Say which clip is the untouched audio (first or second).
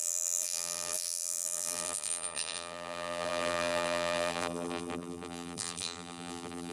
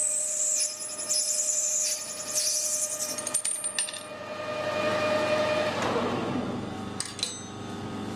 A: second